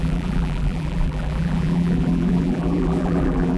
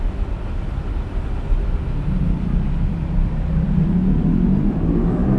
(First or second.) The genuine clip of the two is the second